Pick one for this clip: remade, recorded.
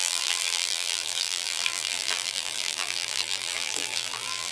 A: remade